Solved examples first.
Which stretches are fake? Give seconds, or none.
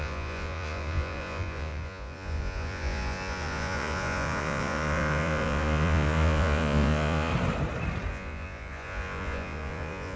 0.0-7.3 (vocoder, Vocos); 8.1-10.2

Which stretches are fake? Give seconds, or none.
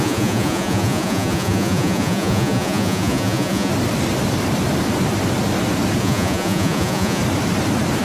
0.0-3.7 (vocoder, Vocos); 6.0-7.2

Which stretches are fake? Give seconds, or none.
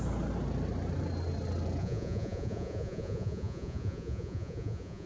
1.8-5.1 (vocoder, Vocos)